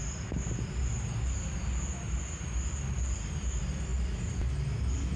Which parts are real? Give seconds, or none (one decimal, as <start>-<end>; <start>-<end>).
0.0-5.2